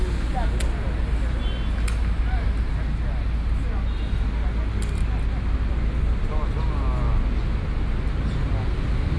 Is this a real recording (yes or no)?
yes